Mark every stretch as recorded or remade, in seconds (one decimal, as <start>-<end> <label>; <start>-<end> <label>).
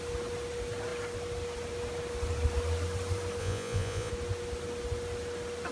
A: 0.0-3.4 recorded; 3.4-4.1 remade; 4.1-5.7 recorded